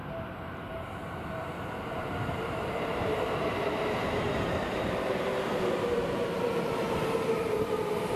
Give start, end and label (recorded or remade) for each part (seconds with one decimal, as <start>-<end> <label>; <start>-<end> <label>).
0.0-8.2 remade

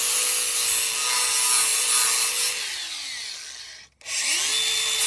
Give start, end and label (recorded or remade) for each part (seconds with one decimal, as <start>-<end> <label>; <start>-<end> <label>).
0.0-5.1 recorded